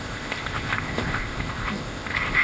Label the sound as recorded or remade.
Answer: remade